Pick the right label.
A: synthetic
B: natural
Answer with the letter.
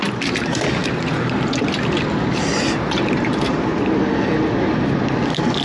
B